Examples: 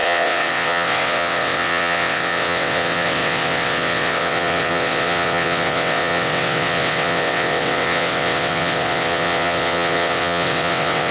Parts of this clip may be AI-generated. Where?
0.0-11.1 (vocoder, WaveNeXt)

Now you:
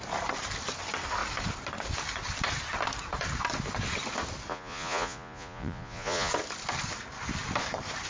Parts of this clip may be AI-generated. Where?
4.5-6.3 (vocoder, Vocos)

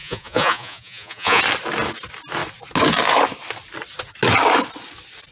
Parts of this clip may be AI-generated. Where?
0.0-1.4 (vocoder, Vocos)

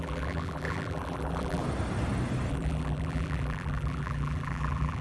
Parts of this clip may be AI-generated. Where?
0.0-1.6 (vocoder, BigVGAN v2); 2.5-5.0

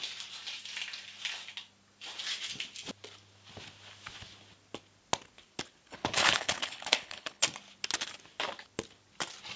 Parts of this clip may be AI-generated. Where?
5.9-7.4 (codec, HILCodec)

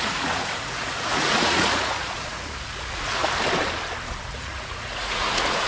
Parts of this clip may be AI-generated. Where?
0.0-3.2 (vocoder, Vocos); 4.3-5.7